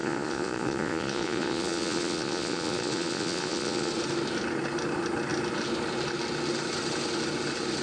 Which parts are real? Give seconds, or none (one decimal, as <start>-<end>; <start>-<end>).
3.9-7.8